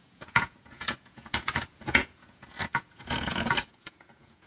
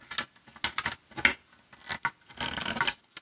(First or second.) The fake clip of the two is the first